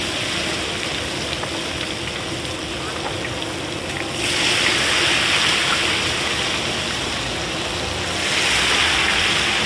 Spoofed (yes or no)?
no